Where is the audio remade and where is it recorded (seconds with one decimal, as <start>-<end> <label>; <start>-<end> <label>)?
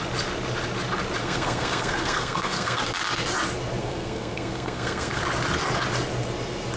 0.0-1.2 recorded; 1.2-2.8 remade; 2.8-3.8 recorded; 3.8-5.2 remade; 5.2-6.8 recorded